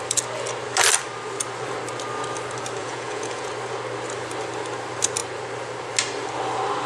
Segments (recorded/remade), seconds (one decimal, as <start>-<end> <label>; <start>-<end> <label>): 0.0-2.8 recorded; 2.8-3.5 remade; 3.5-6.9 recorded